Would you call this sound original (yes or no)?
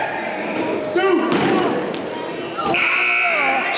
yes